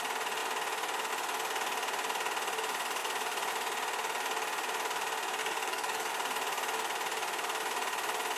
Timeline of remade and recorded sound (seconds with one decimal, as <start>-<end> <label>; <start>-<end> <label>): 0.0-5.4 recorded; 5.4-6.1 remade; 6.1-8.4 recorded